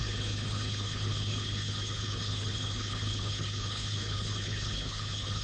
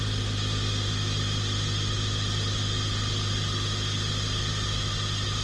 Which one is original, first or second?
second